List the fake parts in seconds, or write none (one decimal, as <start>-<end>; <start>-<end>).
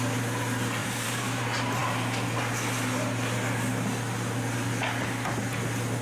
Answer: 0.8-1.4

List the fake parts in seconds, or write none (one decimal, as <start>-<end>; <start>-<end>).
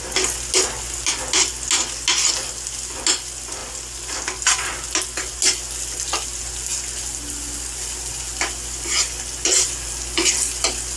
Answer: none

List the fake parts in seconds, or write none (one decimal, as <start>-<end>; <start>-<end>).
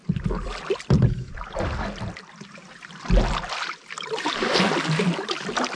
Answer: 0.0-3.5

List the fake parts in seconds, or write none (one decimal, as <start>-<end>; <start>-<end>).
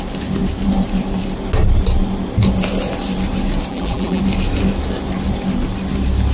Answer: 3.7-4.2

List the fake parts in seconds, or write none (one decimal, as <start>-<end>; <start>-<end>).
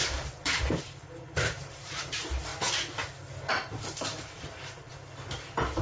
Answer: 0.0-2.5; 3.7-4.9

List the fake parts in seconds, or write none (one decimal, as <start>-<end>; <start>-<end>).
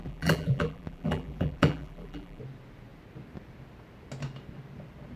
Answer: 0.0-2.4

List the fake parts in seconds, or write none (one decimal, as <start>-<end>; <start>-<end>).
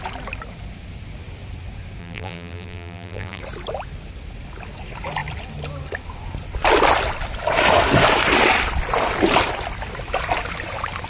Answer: 2.0-3.4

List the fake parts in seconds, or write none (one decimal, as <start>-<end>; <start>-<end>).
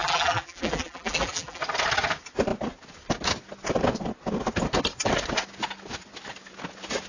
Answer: 0.0-1.6